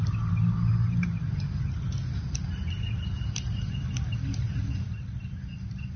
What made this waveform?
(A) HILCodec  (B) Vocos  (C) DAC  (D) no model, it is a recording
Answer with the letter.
D